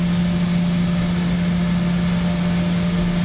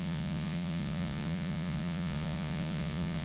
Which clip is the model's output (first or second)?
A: second